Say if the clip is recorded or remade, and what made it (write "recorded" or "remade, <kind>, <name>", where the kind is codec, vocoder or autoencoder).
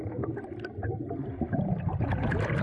recorded